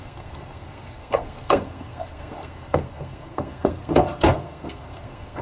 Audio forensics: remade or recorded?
remade